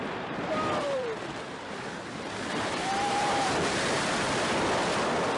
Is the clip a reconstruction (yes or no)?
yes